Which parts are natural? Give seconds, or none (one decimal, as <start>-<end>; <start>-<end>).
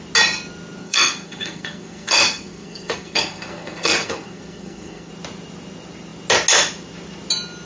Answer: 0.0-0.8; 5.1-7.7